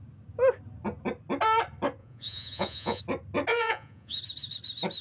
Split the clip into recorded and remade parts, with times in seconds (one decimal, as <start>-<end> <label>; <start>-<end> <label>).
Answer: 0.0-2.0 recorded; 2.0-3.0 remade; 3.0-3.5 recorded; 3.5-4.2 remade; 4.2-5.0 recorded